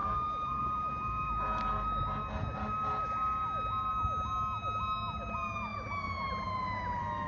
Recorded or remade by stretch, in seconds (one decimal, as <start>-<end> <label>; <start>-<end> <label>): 0.0-2.0 remade; 2.0-5.7 recorded; 5.7-6.3 remade; 6.3-7.3 recorded